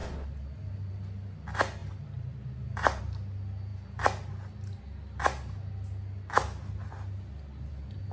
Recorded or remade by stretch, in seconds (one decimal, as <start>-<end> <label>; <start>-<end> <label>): 0.0-8.1 recorded